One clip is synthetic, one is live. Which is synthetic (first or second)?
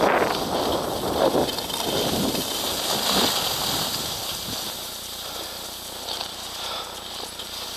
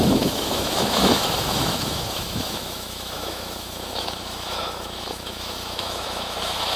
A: second